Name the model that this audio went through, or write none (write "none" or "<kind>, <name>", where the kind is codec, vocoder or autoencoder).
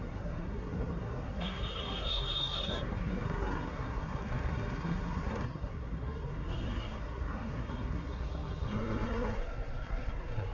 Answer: codec, SNAC